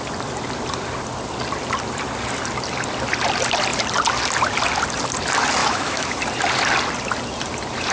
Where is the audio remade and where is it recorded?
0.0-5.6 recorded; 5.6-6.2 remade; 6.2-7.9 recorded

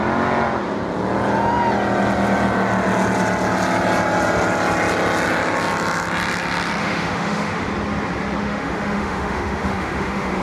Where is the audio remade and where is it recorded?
0.0-6.8 recorded; 6.8-7.7 remade; 7.7-8.4 recorded; 8.4-10.4 remade